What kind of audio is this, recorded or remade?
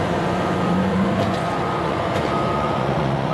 remade